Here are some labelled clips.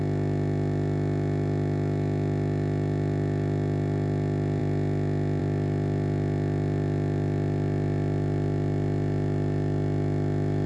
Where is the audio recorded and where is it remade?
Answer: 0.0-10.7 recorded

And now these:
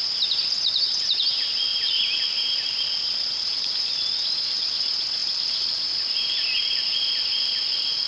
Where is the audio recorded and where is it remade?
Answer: 0.0-1.7 recorded; 1.7-3.7 remade; 3.7-5.2 recorded; 5.2-6.0 remade; 6.0-8.1 recorded

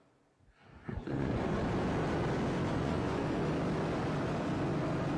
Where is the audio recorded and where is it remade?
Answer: 0.0-0.9 recorded; 0.9-1.6 remade; 1.6-2.7 recorded; 2.7-3.5 remade; 3.5-5.2 recorded